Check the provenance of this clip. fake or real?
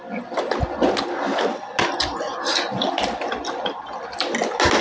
real